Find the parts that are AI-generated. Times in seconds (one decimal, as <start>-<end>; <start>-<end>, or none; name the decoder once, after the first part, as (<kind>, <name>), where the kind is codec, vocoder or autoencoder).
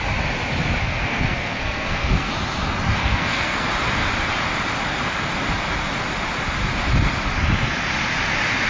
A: 0.8-2.3 (codec, SNAC); 3.0-3.7